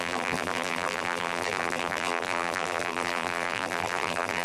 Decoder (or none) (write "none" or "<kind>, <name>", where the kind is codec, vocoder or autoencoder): vocoder, BigVGAN v2